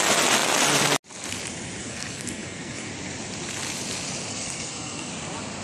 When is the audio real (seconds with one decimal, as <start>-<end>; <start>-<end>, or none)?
0.0-1.8; 2.9-4.3; 5.1-5.6